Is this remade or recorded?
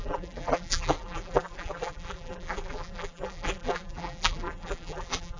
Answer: remade